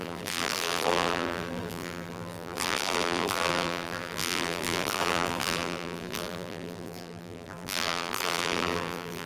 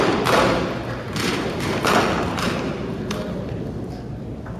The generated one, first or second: first